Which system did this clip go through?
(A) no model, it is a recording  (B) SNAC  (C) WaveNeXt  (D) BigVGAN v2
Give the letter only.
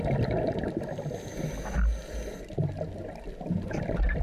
A